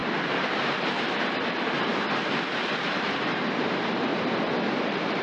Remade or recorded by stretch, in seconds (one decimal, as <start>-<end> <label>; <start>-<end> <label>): 0.0-4.1 remade; 4.1-4.7 recorded; 4.7-5.2 remade